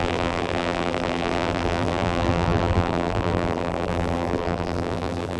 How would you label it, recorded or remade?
remade